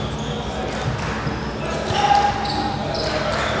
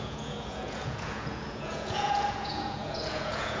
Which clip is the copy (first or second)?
second